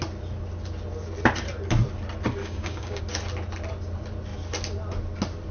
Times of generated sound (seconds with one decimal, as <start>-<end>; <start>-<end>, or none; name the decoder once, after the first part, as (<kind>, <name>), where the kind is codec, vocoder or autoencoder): 2.4-3.0 (codec, DAC)

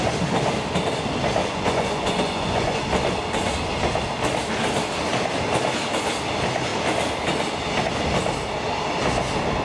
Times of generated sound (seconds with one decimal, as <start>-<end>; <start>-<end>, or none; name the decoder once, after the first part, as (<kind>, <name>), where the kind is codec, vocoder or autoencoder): 1.4-2.8 (vocoder, Vocos)

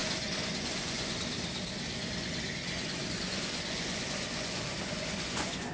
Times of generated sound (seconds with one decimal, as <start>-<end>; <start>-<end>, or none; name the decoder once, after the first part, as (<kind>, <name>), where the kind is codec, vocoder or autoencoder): 0.0-1.2 (vocoder, Vocos); 2.0-5.7